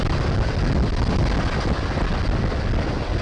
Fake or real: real